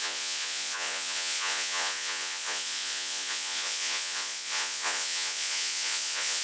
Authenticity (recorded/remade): remade